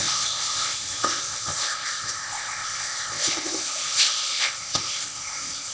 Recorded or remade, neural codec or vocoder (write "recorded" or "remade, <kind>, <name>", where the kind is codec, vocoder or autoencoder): remade, codec, ZipCodec